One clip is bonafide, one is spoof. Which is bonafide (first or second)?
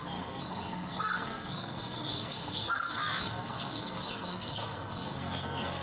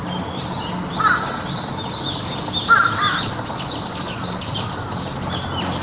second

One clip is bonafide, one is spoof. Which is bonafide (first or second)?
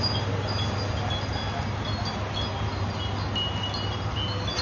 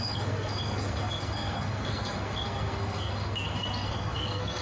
first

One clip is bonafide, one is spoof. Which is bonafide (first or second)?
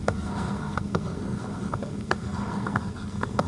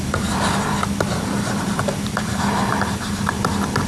second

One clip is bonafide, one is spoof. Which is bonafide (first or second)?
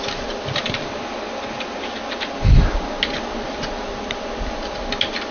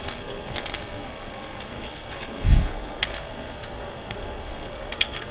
first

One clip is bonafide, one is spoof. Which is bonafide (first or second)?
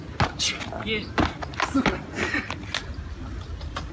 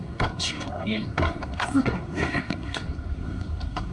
first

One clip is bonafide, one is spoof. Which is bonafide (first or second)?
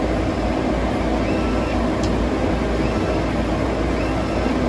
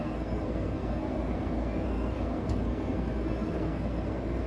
first